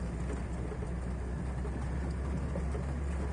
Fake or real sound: real